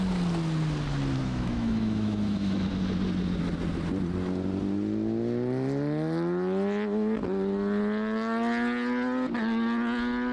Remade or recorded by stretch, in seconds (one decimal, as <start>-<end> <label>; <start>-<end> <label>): 0.0-1.2 recorded; 1.2-2.7 remade; 2.7-10.3 recorded